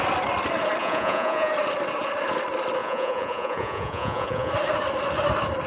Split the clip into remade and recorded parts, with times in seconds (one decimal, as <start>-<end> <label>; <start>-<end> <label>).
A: 0.0-0.8 recorded; 0.8-1.5 remade; 1.5-2.8 recorded; 2.8-4.5 remade; 4.5-5.7 recorded